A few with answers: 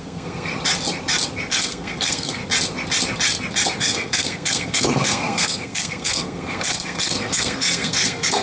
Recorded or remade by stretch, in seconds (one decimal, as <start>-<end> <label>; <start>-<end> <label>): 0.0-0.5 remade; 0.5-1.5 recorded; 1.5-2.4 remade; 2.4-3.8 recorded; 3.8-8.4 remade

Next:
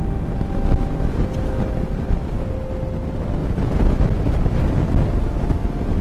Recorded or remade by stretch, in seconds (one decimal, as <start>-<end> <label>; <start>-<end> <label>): 0.0-3.4 recorded; 3.4-3.9 remade; 3.9-6.0 recorded

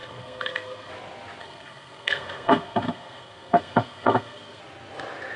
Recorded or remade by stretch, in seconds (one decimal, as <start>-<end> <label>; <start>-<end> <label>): 0.0-0.9 remade; 0.9-1.4 recorded; 1.4-4.6 remade; 4.6-5.4 recorded

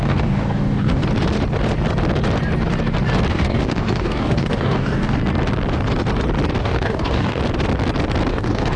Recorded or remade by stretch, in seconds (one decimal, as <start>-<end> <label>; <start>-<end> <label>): 0.0-1.0 remade; 1.0-3.3 recorded; 3.3-5.2 remade; 5.2-6.6 recorded; 6.6-7.4 remade; 7.4-8.3 recorded; 8.3-8.8 remade

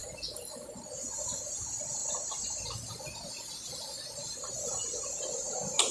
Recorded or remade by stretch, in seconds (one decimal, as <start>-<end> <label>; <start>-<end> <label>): 0.0-5.9 recorded